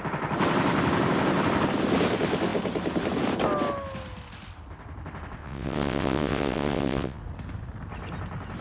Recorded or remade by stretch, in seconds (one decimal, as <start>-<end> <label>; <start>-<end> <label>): 0.0-5.4 recorded; 5.4-7.2 remade; 7.2-8.6 recorded

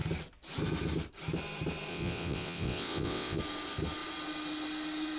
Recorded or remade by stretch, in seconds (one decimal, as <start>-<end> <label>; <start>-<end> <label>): 0.0-1.9 recorded; 1.9-3.4 remade; 3.4-5.2 recorded

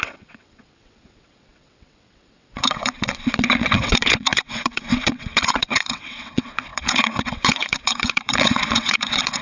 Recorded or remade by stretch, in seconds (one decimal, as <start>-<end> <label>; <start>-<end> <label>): 0.0-9.4 remade

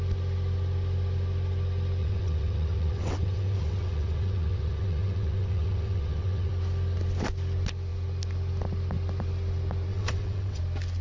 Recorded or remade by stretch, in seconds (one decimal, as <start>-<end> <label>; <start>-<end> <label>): 0.0-2.0 recorded; 2.0-6.5 remade; 6.5-9.9 recorded; 9.9-10.6 remade; 10.6-11.0 recorded

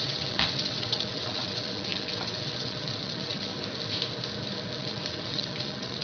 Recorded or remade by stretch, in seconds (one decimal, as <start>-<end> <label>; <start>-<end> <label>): 0.0-3.5 remade; 3.5-4.8 recorded; 4.8-6.0 remade

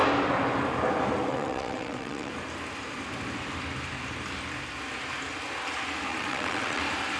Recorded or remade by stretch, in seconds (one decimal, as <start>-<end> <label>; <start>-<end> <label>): 0.0-1.3 recorded; 1.3-2.3 remade; 2.3-6.1 recorded; 6.1-6.8 remade; 6.8-7.2 recorded